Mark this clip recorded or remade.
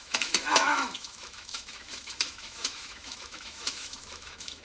remade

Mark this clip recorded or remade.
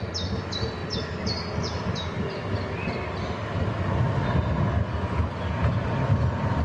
recorded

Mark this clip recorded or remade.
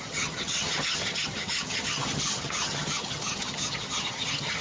remade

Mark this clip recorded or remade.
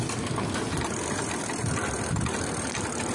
recorded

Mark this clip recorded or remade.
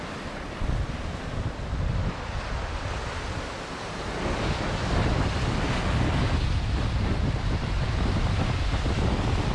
recorded